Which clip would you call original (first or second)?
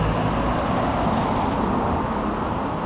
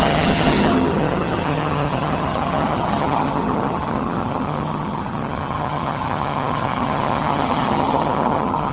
first